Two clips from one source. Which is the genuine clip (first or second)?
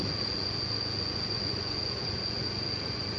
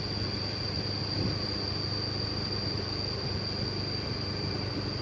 second